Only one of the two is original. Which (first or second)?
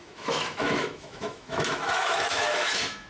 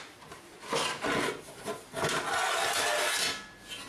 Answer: second